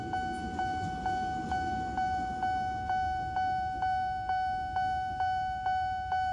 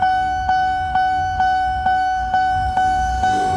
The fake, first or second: second